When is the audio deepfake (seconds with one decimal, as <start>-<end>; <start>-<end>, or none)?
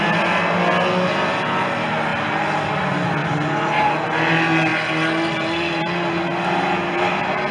none